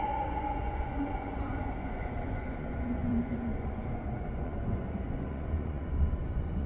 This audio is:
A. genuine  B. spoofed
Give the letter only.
B